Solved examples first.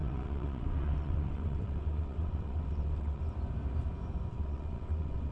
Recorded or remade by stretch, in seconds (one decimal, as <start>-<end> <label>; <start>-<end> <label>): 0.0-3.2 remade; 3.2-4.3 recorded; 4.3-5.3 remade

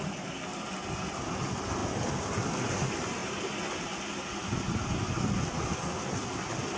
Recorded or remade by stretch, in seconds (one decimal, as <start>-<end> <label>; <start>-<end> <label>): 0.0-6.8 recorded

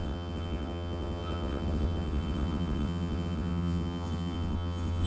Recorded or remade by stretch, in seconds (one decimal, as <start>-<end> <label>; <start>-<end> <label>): 0.0-5.1 remade